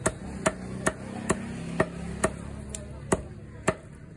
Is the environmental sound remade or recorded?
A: recorded